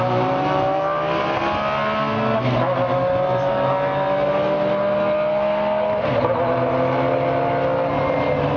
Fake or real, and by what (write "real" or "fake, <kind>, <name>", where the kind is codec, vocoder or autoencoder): real